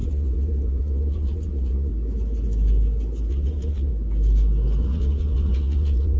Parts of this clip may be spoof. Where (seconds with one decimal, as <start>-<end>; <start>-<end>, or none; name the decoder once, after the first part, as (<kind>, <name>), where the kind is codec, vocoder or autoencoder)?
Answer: 0.0-1.9 (vocoder, Vocos); 3.3-3.9; 4.8-6.2